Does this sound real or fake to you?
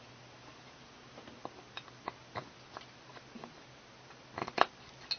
real